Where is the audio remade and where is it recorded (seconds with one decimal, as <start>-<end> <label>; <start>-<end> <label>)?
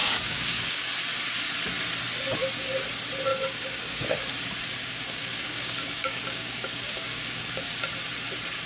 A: 0.0-0.9 remade; 0.9-3.3 recorded; 3.3-4.3 remade; 4.3-4.8 recorded; 4.8-7.8 remade; 7.8-8.7 recorded